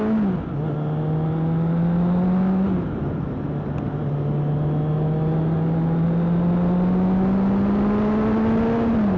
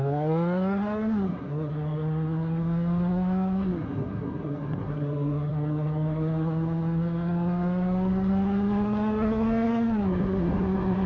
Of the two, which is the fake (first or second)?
second